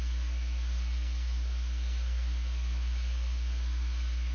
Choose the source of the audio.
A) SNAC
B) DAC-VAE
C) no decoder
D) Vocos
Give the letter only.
A